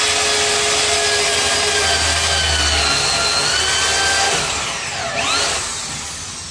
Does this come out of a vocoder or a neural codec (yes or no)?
no